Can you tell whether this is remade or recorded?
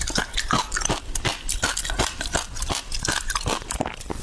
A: recorded